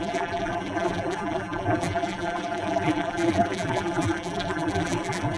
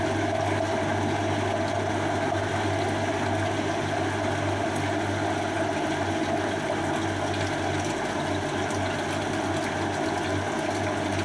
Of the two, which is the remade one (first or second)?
first